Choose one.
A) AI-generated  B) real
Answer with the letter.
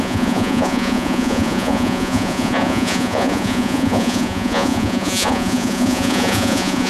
A